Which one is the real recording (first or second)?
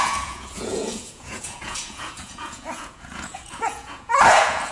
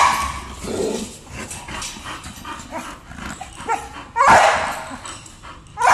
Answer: second